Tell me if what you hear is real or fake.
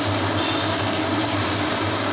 real